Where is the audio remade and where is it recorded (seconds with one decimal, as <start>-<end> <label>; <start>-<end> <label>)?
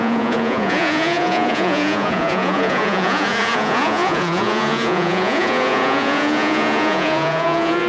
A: 0.0-7.9 remade